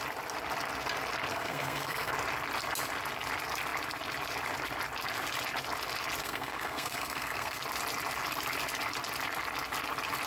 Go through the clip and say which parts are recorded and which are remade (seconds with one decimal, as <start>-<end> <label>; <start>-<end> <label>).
0.0-1.3 recorded; 1.3-2.1 remade; 2.1-6.2 recorded; 6.2-7.6 remade; 7.6-10.3 recorded